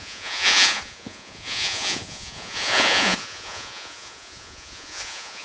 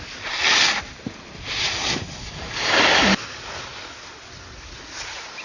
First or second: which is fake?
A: first